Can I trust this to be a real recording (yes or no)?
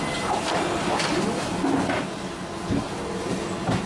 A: yes